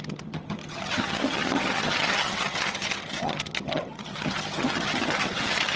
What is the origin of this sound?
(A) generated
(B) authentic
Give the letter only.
A